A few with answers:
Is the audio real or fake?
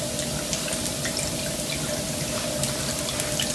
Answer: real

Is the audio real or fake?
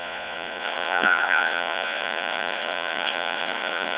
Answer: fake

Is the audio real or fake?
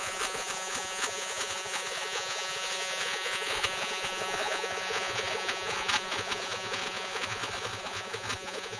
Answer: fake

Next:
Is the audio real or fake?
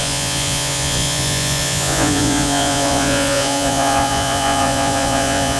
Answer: fake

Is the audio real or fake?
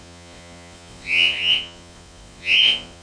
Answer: fake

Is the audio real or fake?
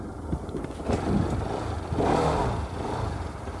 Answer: real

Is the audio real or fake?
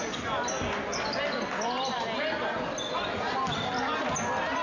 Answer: real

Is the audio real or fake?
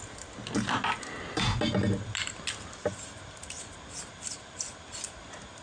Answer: real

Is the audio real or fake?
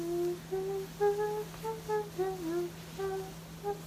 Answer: real